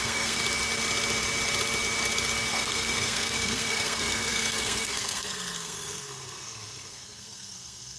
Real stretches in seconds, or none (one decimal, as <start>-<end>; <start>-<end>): 0.4-2.5

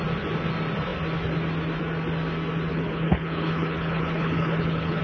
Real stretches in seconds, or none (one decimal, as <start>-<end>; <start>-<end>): 0.0-2.7